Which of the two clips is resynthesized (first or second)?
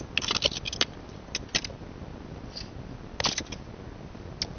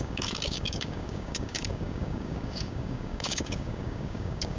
second